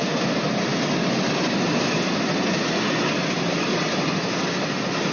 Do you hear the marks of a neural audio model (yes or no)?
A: no